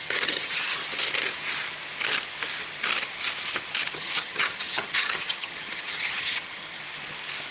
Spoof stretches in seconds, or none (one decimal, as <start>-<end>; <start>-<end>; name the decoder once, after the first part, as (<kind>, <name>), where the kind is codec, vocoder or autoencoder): 0.0-0.8 (vocoder, HiFi-GAN); 3.9-6.8